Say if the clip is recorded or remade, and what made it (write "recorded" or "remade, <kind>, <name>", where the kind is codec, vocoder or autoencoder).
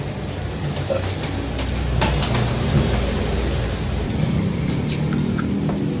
recorded